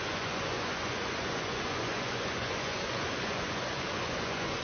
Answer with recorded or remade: remade